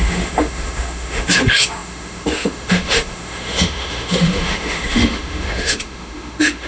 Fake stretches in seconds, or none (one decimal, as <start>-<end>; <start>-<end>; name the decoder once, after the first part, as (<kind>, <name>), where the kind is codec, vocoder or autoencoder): 0.0-6.7 (autoencoder, DAC-VAE)